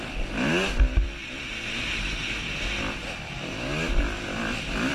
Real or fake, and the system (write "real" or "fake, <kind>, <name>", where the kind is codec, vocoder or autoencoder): real